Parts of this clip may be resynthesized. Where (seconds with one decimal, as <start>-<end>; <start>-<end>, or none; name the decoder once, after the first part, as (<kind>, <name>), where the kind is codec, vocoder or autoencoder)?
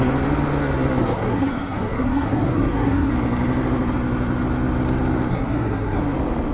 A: 1.0-3.1 (codec, SNAC); 5.3-6.0